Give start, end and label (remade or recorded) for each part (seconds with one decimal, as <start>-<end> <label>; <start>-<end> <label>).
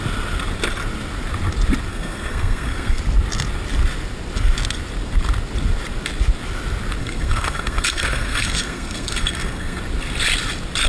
0.0-1.9 recorded; 1.9-3.0 remade; 3.0-7.0 recorded; 7.0-9.8 remade; 9.8-10.9 recorded